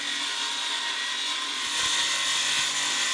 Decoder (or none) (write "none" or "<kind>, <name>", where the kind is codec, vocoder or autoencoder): none